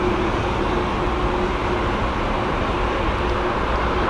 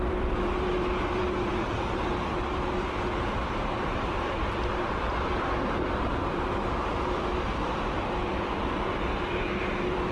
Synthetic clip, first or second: second